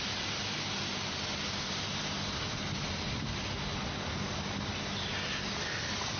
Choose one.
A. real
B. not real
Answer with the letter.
A